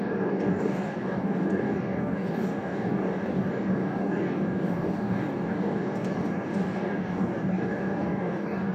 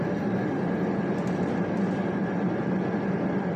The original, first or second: second